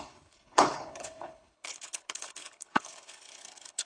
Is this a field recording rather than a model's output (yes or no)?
no